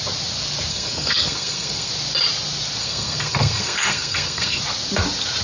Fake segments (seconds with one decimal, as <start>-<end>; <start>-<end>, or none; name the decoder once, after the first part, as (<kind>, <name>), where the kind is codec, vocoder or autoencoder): 0.7-1.9 (codec, SNAC); 2.8-4.6

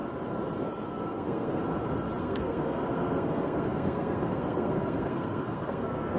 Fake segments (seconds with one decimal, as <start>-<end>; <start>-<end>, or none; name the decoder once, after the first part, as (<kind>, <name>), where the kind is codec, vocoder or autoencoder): 0.9-1.6 (codec, SNAC); 2.2-6.2

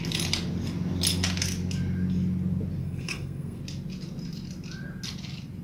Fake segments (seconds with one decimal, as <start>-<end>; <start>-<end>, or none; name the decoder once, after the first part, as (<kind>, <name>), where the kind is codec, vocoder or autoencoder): 2.8-3.6 (codec, SNAC)